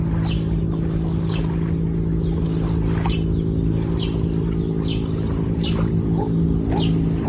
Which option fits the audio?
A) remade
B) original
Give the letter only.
B